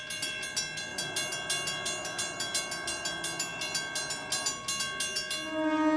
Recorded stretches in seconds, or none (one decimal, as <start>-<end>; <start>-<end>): 0.0-6.0